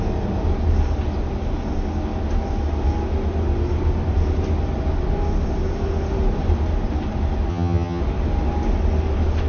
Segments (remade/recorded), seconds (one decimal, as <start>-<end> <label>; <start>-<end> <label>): 0.0-7.5 recorded; 7.5-8.0 remade; 8.0-9.5 recorded